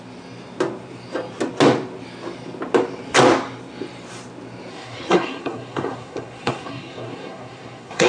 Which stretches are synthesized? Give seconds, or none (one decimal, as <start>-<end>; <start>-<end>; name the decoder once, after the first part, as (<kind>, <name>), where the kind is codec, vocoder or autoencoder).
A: 4.7-8.1 (codec, SNAC)